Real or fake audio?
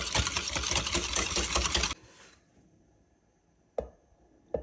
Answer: real